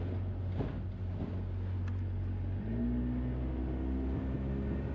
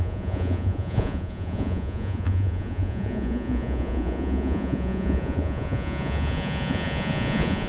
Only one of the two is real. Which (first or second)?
first